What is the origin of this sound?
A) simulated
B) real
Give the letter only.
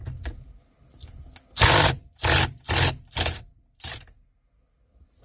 B